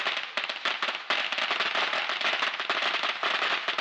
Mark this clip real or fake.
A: real